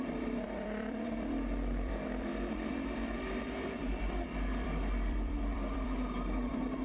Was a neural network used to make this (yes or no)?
yes